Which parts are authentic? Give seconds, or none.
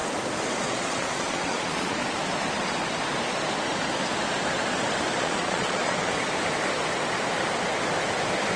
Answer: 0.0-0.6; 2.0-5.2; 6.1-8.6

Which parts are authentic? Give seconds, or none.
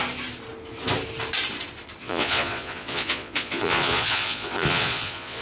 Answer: 0.0-2.0